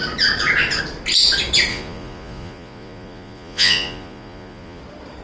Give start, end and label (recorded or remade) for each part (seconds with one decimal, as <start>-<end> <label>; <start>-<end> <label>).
0.0-1.7 recorded; 1.7-4.8 remade; 4.8-5.2 recorded